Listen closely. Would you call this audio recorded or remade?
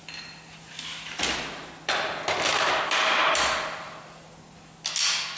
recorded